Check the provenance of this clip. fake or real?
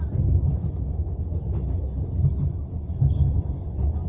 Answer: real